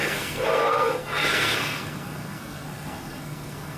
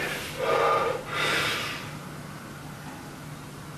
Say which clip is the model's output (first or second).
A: first